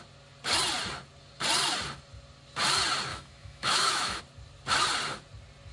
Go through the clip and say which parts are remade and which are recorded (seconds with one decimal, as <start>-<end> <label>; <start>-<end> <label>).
0.0-3.1 recorded; 3.1-4.2 remade; 4.2-5.7 recorded